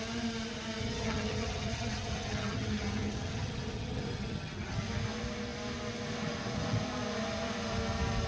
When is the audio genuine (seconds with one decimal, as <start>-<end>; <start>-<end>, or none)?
0.0-0.8; 4.8-8.3

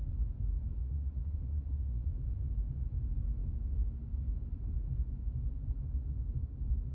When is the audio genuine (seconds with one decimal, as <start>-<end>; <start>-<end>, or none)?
0.0-0.8; 2.1-6.9

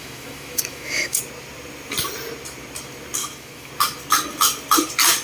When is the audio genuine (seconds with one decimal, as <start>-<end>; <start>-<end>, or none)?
1.2-3.2; 3.7-5.2

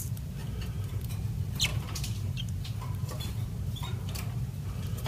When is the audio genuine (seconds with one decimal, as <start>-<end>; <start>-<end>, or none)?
none

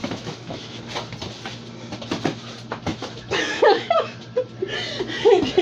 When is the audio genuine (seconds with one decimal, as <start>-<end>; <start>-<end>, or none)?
0.8-2.9; 4.2-5.6

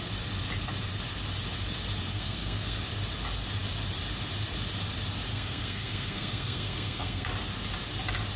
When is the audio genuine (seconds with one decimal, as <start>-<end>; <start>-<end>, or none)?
0.0-2.1; 2.8-5.3; 7.3-8.4